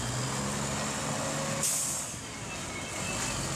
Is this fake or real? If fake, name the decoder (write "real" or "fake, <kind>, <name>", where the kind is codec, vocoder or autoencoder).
real